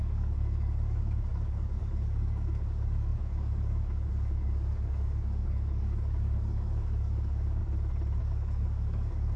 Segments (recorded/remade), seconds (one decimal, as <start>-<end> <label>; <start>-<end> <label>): 0.0-7.6 remade; 7.6-8.2 recorded; 8.2-9.4 remade